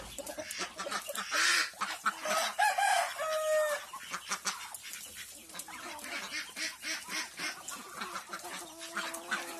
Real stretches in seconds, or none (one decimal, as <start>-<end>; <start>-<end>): 0.0-9.6